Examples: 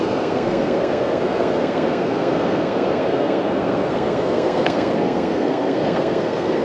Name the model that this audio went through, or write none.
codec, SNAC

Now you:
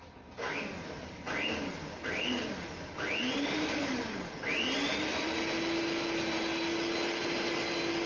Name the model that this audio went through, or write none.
none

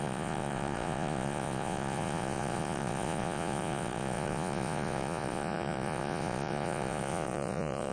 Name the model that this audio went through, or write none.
vocoder, Vocos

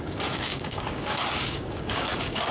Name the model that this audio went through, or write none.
codec, DAC